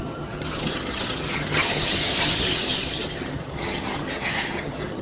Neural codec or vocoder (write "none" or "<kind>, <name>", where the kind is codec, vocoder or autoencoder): vocoder, HiFi-GAN